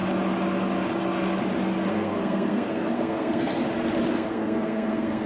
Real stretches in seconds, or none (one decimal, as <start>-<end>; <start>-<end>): 0.0-1.9; 3.6-4.1